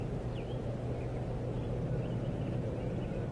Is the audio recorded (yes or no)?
no